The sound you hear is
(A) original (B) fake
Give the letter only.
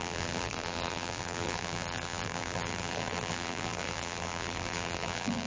B